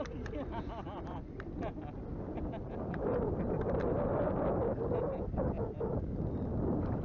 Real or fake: real